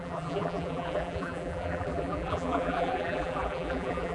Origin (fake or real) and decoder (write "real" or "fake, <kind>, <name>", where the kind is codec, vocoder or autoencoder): fake, vocoder, BigVGAN v2